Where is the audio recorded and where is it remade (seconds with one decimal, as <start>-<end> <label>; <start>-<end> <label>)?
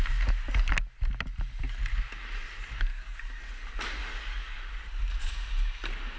0.0-2.9 recorded; 2.9-3.5 remade; 3.5-4.0 recorded; 4.0-4.6 remade; 4.6-6.2 recorded